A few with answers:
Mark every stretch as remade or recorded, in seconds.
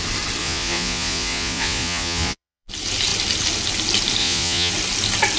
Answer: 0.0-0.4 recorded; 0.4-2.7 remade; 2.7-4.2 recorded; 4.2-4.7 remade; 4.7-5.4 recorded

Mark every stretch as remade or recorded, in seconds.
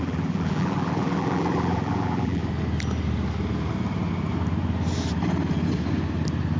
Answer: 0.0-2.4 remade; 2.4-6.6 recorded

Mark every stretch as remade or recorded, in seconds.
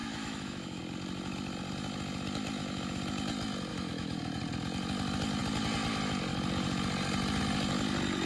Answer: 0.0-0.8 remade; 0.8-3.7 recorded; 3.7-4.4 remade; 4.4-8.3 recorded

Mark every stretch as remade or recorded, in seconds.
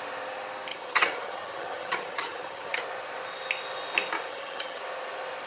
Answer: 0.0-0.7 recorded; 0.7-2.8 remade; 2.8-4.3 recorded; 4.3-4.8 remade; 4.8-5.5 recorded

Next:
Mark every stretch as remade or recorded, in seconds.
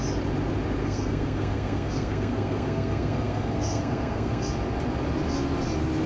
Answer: 0.0-0.8 recorded; 0.8-4.5 remade; 4.5-6.1 recorded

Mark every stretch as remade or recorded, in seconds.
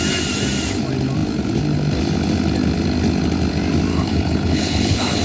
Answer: 0.0-3.9 recorded; 3.9-5.2 remade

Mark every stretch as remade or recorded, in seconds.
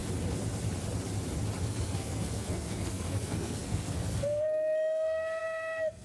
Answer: 0.0-1.6 recorded; 1.6-6.0 remade